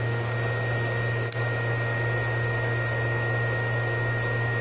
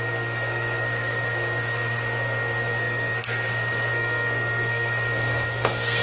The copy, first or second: second